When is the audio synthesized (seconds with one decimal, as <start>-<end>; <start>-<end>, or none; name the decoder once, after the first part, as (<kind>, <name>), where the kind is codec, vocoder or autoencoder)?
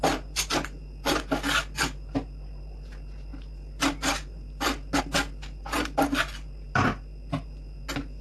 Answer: none